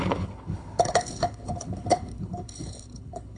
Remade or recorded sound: remade